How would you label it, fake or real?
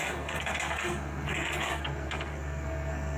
fake